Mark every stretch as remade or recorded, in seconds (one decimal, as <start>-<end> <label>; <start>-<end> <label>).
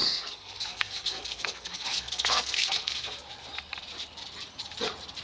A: 0.0-3.1 remade; 3.1-5.2 recorded